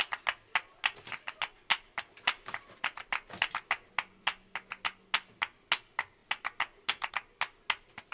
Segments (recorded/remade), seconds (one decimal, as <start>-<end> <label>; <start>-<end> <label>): 0.0-8.1 recorded